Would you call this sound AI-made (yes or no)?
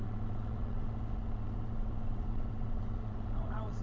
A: yes